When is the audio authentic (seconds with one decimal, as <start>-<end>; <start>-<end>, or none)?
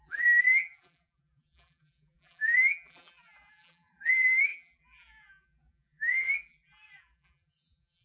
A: none